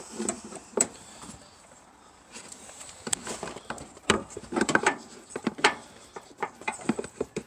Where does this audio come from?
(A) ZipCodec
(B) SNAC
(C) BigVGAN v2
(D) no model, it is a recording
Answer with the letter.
C